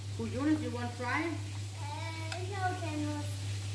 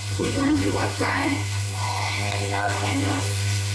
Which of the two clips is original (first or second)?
first